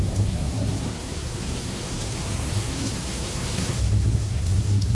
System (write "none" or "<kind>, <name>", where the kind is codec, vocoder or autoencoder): codec, SNAC